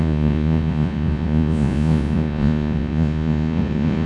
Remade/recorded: remade